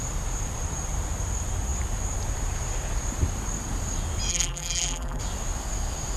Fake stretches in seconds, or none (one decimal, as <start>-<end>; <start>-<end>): 4.3-5.2